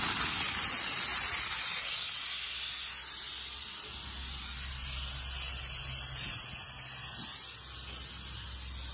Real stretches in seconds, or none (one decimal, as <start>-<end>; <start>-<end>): 0.0-8.9